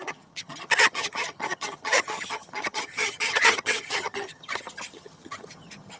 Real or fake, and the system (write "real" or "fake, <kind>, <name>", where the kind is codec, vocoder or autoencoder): fake, vocoder, HiFi-GAN